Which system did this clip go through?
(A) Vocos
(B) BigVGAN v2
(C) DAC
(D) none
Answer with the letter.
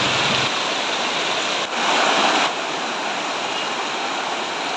D